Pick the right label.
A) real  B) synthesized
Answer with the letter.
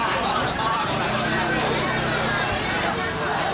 A